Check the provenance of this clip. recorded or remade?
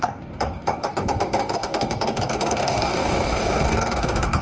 remade